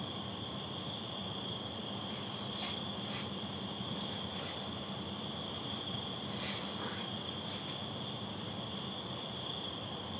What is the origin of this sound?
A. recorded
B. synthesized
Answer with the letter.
A